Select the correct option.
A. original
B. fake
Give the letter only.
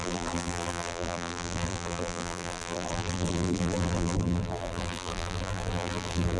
B